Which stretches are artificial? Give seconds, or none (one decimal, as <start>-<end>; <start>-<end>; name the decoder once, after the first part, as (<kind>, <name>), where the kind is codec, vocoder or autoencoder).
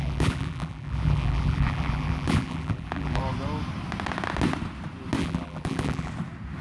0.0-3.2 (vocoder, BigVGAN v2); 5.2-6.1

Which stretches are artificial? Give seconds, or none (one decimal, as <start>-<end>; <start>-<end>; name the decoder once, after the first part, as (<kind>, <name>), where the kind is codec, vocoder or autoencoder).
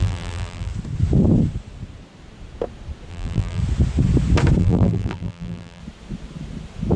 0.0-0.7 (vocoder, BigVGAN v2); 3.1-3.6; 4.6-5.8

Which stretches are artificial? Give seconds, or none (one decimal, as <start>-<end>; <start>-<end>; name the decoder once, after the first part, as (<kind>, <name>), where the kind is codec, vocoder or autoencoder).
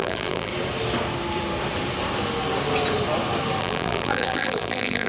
0.0-0.5 (vocoder, BigVGAN v2); 3.6-5.1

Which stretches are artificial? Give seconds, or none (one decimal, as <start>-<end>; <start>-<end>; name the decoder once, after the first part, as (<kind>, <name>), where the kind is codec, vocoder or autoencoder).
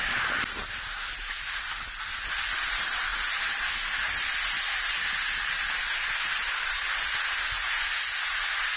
none